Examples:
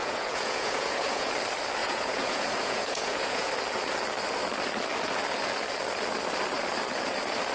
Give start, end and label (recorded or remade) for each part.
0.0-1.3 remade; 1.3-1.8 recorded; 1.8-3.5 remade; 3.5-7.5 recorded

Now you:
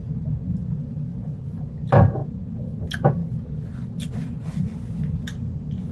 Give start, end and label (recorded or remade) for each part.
0.0-1.1 recorded; 1.1-1.7 remade; 1.7-2.2 recorded; 2.2-2.8 remade; 2.8-5.9 recorded

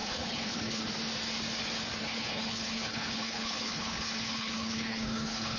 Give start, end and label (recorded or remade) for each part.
0.0-0.8 remade; 0.8-2.0 recorded; 2.0-5.6 remade

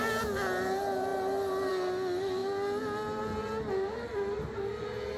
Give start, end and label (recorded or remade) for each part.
0.0-5.2 recorded

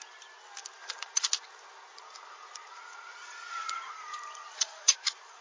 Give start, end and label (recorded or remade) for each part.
0.0-0.8 recorded; 0.8-1.3 remade; 1.3-1.9 recorded; 1.9-5.4 remade

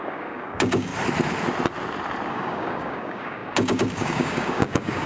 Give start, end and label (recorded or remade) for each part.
0.0-0.9 remade; 0.9-2.3 recorded; 2.3-5.1 remade